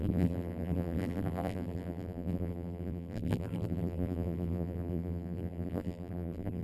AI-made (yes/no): yes